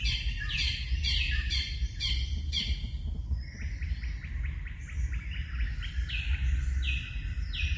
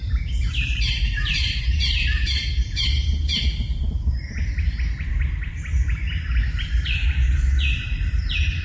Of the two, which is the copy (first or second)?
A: second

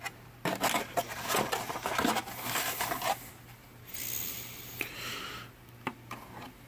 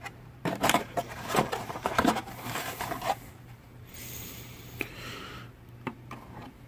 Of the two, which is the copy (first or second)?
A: second